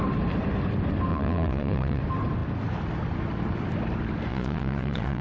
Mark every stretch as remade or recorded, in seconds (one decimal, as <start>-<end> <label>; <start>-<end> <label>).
0.0-1.1 recorded; 1.1-2.0 remade; 2.0-4.3 recorded; 4.3-5.2 remade